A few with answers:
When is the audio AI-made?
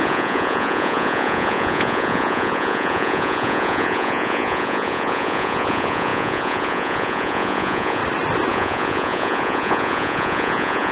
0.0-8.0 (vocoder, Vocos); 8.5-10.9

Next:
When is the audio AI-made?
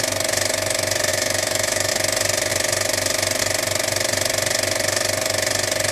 1.1-1.9 (autoencoder, DAC-VAE)